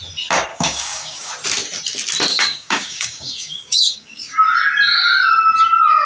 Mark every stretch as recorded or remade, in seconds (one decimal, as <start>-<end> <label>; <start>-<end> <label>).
0.0-0.5 recorded; 0.5-1.3 remade; 1.3-2.3 recorded; 2.3-4.4 remade; 4.4-6.0 recorded